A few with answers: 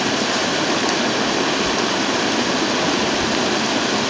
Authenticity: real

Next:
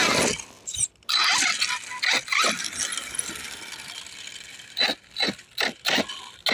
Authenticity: real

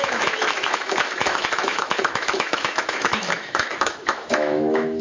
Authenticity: fake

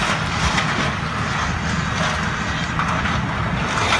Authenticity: real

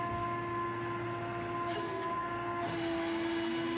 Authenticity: real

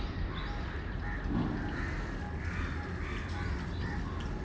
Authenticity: real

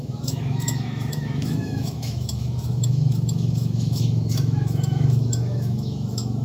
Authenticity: fake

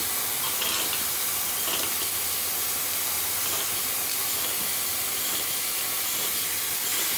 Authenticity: real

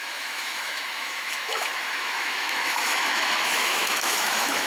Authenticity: fake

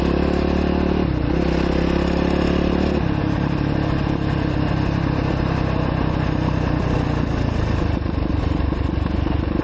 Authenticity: real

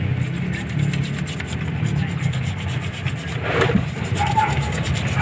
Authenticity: real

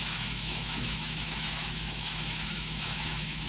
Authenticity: fake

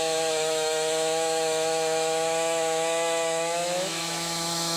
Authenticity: fake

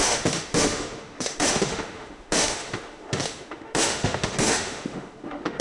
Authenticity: fake